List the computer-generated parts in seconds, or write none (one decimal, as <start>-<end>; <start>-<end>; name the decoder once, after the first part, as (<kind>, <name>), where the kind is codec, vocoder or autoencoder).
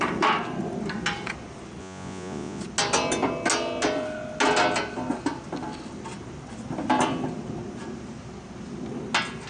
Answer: 1.8-2.6 (vocoder, Vocos)